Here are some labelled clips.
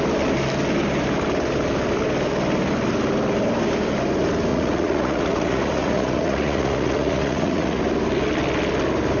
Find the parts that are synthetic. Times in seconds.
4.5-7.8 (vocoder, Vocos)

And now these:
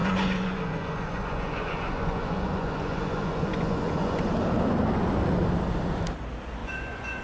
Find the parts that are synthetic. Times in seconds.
0.0-4.2 (vocoder, Vocos); 6.6-7.2

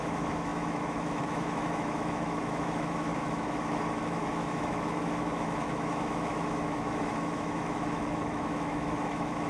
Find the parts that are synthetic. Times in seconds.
0.0-9.5 (autoencoder, DAC-VAE)

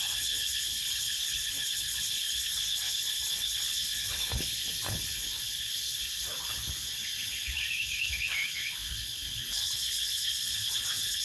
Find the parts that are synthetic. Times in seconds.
0.0-11.2 (codec, HILCodec)

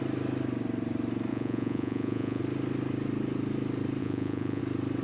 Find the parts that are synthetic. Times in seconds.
1.3-2.4 (vocoder, Vocos); 4.0-4.6

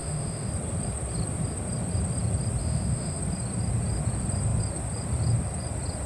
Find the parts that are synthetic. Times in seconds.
0.0-0.5 (autoencoder, DAC-VAE); 2.6-3.2

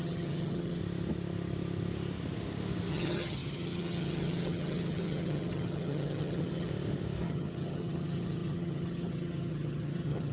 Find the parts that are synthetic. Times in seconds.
0.0-0.8 (vocoder, HiFi-GAN); 2.9-6.7; 7.2-10.3